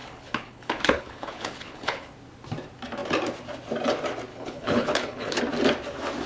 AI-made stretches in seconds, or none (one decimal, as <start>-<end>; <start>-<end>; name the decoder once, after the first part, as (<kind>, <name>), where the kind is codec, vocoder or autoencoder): 0.0-2.1 (codec, HILCodec); 4.3-5.4